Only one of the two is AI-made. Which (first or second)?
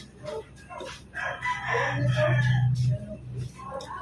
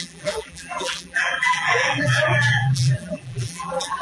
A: second